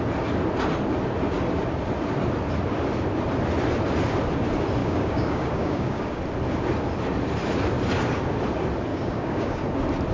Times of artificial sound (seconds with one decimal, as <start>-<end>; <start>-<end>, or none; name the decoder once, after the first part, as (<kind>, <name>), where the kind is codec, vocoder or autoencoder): 4.8-6.2 (codec, DAC); 8.9-9.6